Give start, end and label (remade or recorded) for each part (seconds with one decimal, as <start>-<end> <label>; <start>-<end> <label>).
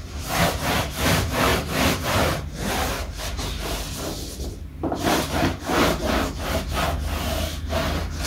0.0-8.3 recorded